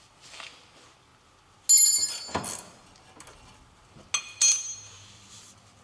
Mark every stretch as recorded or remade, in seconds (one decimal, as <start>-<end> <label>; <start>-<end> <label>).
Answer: 0.0-5.8 recorded